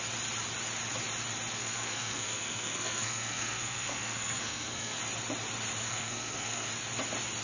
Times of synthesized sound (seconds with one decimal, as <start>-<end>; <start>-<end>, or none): 1.6-5.0; 5.9-6.7